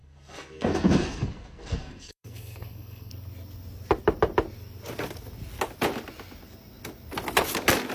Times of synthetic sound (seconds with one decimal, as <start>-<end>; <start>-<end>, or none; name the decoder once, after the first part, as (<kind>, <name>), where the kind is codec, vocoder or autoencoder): 0.0-3.1 (codec, SNAC)